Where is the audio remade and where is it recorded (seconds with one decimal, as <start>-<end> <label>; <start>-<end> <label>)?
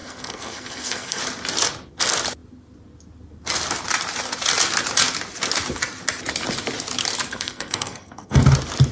0.0-1.2 remade; 1.2-7.3 recorded; 7.3-8.4 remade; 8.4-8.9 recorded